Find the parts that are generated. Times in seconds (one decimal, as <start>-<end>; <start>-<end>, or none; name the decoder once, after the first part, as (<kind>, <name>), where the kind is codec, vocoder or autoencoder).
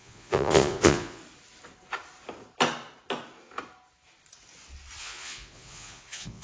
0.0-1.2 (vocoder, Vocos); 5.0-6.4